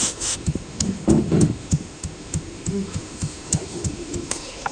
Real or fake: fake